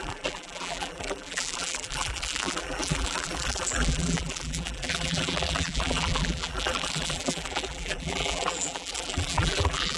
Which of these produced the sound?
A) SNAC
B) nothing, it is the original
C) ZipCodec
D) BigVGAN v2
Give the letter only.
D